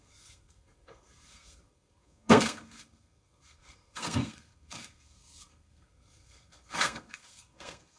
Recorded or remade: remade